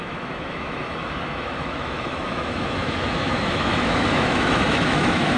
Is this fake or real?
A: fake